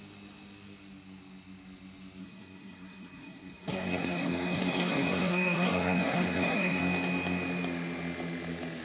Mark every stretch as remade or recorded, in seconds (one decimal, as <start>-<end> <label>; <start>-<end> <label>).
0.0-2.2 recorded; 2.2-6.8 remade; 6.8-8.8 recorded